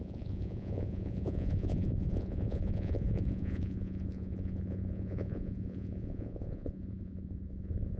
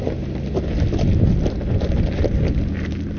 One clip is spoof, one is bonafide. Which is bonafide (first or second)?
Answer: second